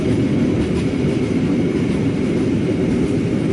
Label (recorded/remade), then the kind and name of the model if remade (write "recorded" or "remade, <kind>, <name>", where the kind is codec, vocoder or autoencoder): recorded